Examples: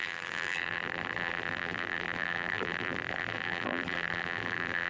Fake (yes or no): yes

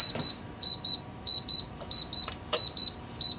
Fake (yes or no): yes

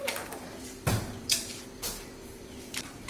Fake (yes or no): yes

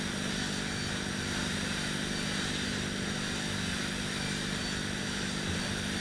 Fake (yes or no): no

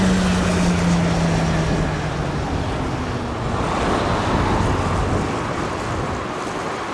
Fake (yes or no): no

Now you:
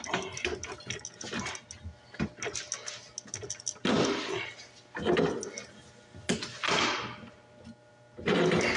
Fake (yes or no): no